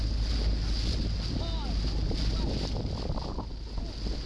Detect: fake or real real